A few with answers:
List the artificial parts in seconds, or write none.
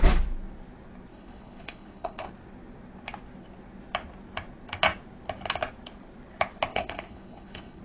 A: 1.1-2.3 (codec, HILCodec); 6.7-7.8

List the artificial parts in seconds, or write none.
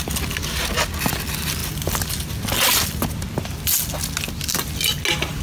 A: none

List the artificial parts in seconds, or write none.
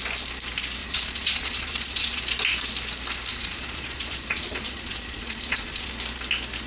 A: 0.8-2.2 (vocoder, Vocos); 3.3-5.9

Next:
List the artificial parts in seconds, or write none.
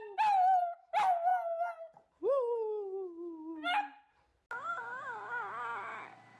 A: none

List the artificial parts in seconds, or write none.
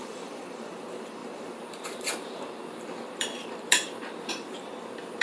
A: 0.0-4.7 (vocoder, BigVGAN v2)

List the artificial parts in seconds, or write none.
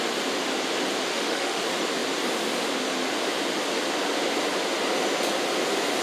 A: 1.1-1.6 (autoencoder, DAC-VAE)